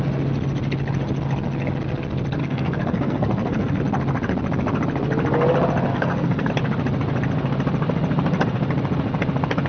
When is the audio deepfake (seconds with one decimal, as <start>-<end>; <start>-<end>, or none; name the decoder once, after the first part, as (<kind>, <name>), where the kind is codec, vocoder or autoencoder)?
2.4-3.8 (codec, SNAC); 5.9-6.5